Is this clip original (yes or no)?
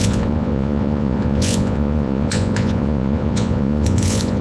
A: no